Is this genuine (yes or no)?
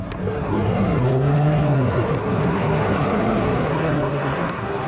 no